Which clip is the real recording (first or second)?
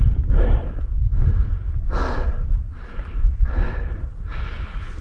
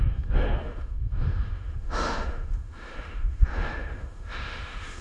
first